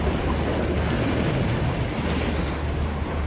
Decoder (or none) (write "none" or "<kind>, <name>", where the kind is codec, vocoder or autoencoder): none